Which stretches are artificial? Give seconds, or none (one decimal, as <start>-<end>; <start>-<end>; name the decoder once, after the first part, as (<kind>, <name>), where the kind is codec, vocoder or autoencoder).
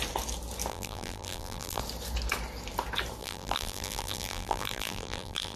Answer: 0.7-1.8 (vocoder, BigVGAN v2); 3.2-5.6